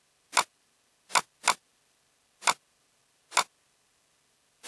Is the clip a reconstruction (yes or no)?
no